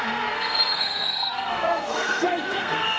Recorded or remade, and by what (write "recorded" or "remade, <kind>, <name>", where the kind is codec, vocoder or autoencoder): remade, codec, SNAC